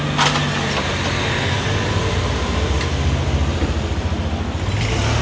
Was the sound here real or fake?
real